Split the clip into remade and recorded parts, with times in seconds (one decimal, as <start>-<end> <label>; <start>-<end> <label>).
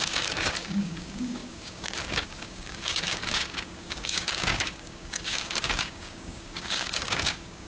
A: 0.0-7.7 remade